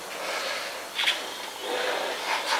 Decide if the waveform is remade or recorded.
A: recorded